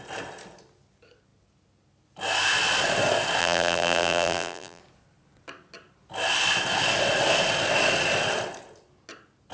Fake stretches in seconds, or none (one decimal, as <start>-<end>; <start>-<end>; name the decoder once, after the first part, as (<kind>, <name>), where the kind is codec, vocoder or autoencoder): 3.4-4.8 (vocoder, BigVGAN v2)